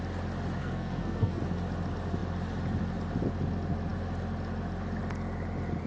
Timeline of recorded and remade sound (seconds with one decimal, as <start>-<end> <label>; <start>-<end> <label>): 0.0-0.6 recorded; 0.6-1.4 remade; 1.4-5.9 recorded